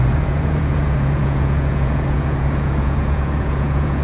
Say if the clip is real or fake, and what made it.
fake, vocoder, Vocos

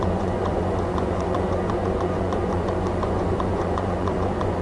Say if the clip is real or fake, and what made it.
fake, vocoder, Vocos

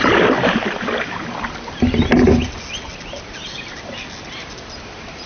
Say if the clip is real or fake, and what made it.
real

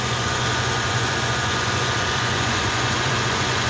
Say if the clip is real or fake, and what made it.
fake, vocoder, Vocos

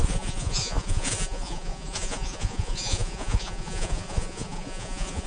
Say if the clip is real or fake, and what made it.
fake, vocoder, Vocos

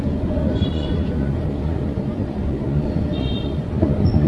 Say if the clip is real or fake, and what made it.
fake, vocoder, Vocos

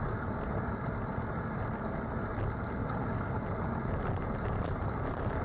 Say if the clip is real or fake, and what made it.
real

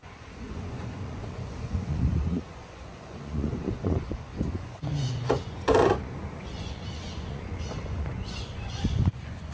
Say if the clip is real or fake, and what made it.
fake, vocoder, Vocos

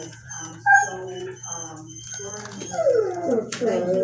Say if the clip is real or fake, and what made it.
fake, vocoder, Vocos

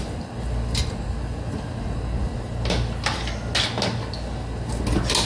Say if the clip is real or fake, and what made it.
real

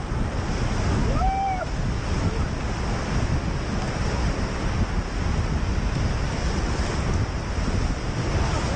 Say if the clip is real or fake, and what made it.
real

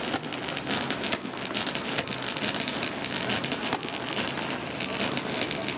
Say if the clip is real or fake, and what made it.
real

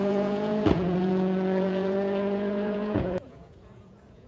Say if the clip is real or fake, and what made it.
fake, vocoder, Vocos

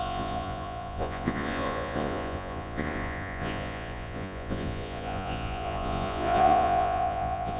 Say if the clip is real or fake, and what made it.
fake, vocoder, Vocos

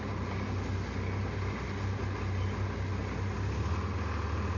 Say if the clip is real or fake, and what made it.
real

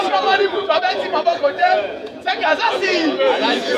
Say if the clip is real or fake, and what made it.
fake, vocoder, Vocos